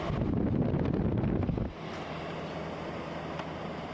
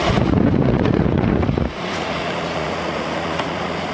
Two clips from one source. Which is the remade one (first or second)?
second